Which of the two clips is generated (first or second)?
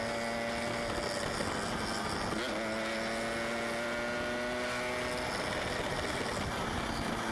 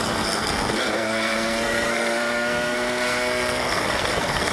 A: second